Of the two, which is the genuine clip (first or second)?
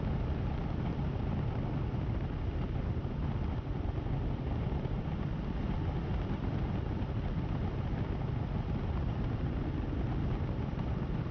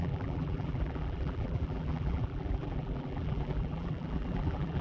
first